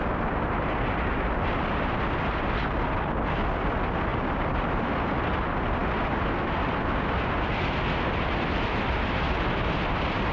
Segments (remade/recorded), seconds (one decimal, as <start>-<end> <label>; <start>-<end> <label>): 0.0-4.1 recorded; 4.1-4.9 remade; 4.9-10.3 recorded